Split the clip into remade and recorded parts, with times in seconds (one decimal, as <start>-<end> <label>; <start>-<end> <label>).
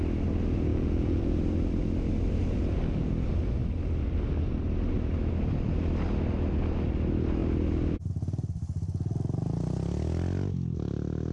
0.0-0.7 recorded; 0.7-1.2 remade; 1.2-11.3 recorded